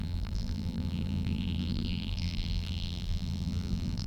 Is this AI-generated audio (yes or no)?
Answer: yes